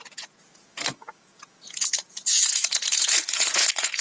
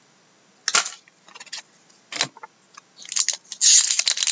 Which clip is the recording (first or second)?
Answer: second